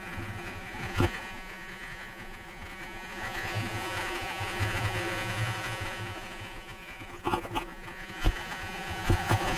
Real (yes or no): no